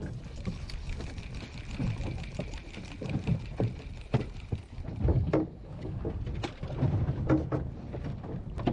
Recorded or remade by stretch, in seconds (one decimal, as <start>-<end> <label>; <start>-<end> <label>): 0.0-5.1 recorded; 5.1-6.0 remade; 6.0-8.7 recorded